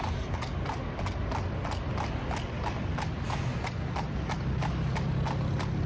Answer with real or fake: real